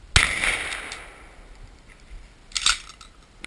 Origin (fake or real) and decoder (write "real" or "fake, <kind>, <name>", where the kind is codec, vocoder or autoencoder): real